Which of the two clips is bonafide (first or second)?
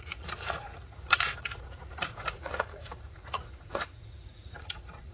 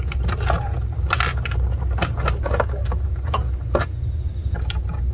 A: second